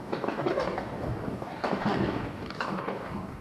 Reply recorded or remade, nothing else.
remade